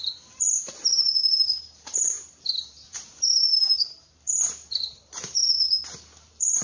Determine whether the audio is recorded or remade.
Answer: remade